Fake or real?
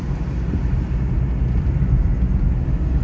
real